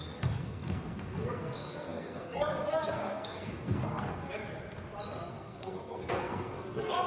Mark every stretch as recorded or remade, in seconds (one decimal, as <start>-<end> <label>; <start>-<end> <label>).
0.0-4.4 remade; 4.4-5.3 recorded; 5.3-7.1 remade